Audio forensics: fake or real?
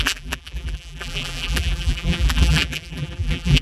fake